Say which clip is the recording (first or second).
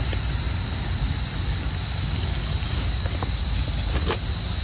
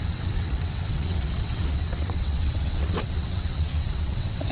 first